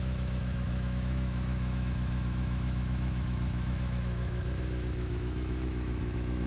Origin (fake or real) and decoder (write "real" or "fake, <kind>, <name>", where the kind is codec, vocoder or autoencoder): fake, autoencoder, DAC-VAE